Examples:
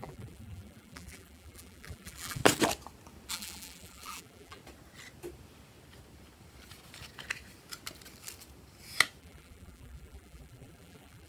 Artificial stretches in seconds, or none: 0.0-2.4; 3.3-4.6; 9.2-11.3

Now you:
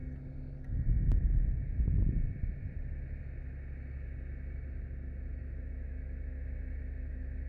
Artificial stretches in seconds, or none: 5.4-7.5

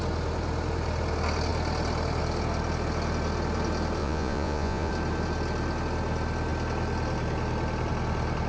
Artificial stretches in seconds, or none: 4.0-4.9

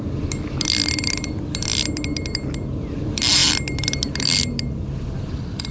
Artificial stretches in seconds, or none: none